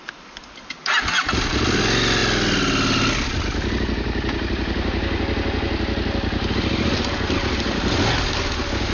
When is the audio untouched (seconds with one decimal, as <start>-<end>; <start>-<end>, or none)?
0.0-8.9